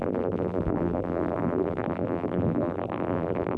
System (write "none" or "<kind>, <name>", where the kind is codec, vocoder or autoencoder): vocoder, BigVGAN v2